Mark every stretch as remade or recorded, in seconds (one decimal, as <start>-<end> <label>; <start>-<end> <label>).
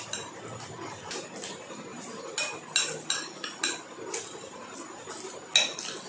0.0-6.1 recorded